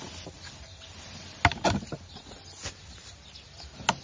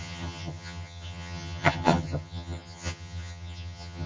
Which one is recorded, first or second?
first